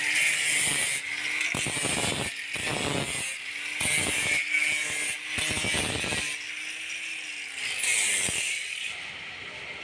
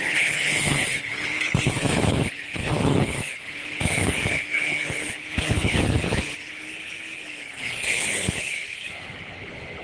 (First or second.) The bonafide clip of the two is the first